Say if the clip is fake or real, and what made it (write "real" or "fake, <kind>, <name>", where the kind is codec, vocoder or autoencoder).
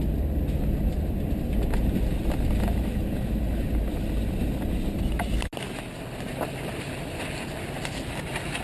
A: real